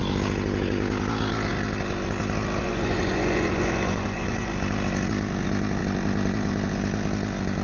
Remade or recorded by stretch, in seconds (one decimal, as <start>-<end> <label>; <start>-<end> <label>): 0.0-2.6 recorded; 2.6-4.5 remade; 4.5-7.6 recorded